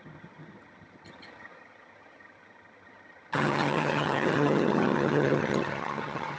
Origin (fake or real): fake